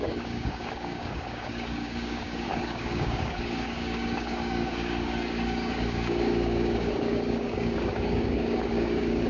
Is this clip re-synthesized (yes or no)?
yes